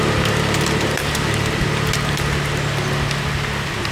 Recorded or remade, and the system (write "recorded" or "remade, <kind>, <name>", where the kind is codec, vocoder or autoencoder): recorded